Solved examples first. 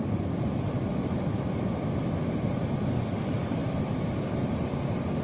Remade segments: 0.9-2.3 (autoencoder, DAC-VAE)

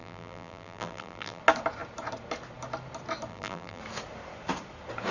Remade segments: 0.0-1.4 (vocoder, BigVGAN v2); 3.3-3.8